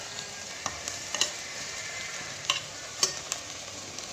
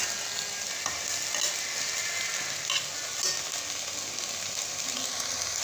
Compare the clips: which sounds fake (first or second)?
first